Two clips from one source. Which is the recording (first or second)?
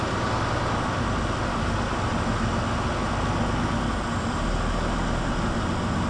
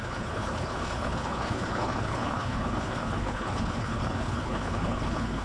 first